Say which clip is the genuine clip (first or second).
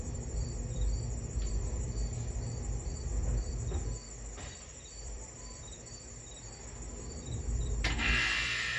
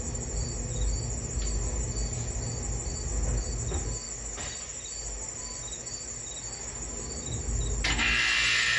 second